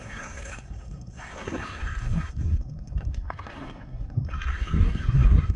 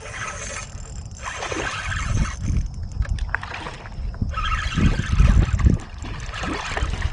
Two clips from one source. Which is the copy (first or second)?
first